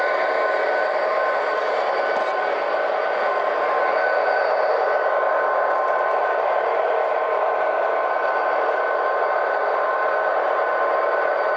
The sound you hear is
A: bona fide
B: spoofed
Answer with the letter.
B